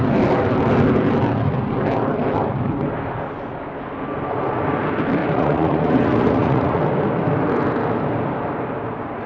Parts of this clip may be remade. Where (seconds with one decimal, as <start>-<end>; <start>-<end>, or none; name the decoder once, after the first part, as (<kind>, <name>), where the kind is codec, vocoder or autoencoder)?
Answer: 5.2-6.8 (vocoder, Vocos)